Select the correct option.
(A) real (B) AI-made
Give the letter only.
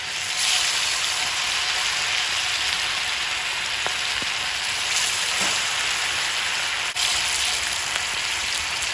A